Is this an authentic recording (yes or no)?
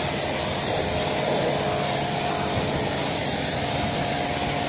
yes